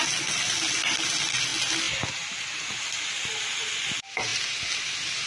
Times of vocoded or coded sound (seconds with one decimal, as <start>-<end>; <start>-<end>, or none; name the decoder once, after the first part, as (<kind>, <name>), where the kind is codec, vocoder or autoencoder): none